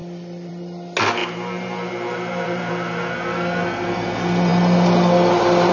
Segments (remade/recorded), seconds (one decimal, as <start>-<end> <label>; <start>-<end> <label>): 0.0-1.2 recorded; 1.2-2.7 remade; 2.7-5.7 recorded